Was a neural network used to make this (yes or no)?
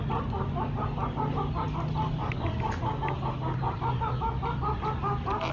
no